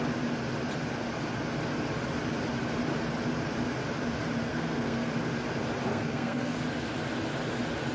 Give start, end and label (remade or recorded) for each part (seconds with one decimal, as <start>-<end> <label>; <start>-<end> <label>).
0.0-4.5 recorded; 4.5-5.1 remade; 5.1-5.9 recorded; 5.9-6.6 remade; 6.6-7.9 recorded